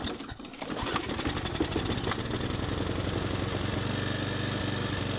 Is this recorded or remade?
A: recorded